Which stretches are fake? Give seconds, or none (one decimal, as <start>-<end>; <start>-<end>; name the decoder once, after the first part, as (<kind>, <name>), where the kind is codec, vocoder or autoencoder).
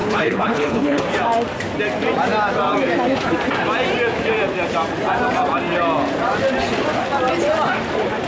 0.0-1.0 (codec, HILCodec)